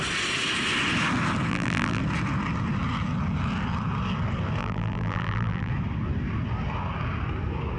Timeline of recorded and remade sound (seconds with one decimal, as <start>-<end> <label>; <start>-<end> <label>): 0.0-1.5 recorded; 1.5-2.0 remade; 2.0-4.6 recorded; 4.6-5.7 remade; 5.7-7.8 recorded

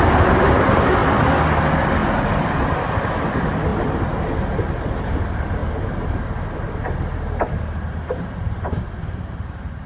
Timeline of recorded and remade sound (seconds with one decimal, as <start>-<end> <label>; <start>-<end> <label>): 0.0-1.0 remade; 1.0-1.6 recorded; 1.6-3.7 remade; 3.7-5.0 recorded; 5.0-5.6 remade; 5.6-6.5 recorded; 6.5-9.9 remade

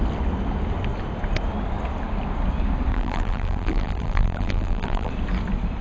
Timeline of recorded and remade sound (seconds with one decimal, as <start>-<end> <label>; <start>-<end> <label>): 0.0-2.9 recorded; 2.9-5.1 remade; 5.1-5.8 recorded